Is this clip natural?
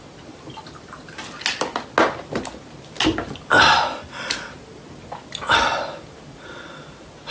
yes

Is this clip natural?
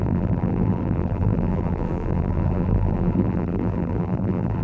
no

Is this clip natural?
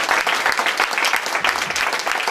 yes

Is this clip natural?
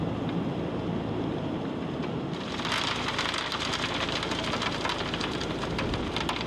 no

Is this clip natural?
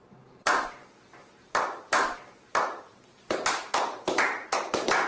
no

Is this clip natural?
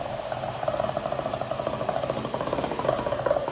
no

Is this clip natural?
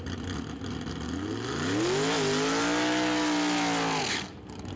yes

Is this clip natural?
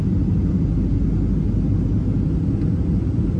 yes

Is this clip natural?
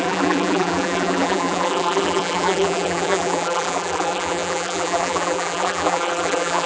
no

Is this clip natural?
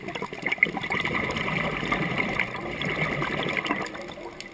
yes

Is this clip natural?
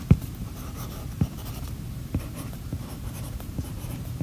no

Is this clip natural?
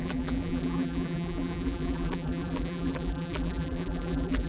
no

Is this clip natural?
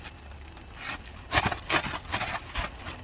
yes